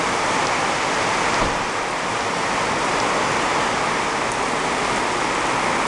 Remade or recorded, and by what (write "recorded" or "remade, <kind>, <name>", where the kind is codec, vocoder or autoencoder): recorded